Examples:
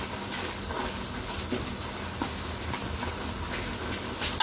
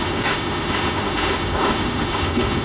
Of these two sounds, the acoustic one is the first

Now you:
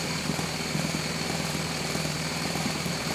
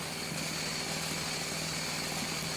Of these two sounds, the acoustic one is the second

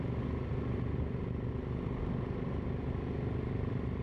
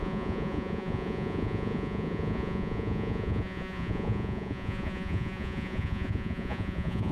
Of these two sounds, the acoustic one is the first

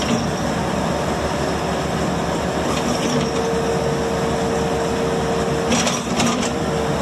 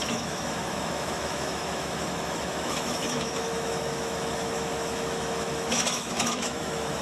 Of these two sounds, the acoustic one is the first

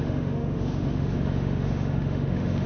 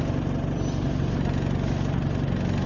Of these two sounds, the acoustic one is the second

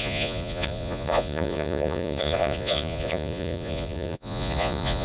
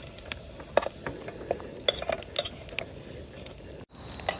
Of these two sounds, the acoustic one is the second